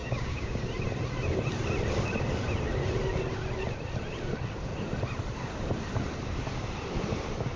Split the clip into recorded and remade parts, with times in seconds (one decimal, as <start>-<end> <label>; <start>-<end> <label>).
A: 0.0-0.6 remade; 0.6-7.6 recorded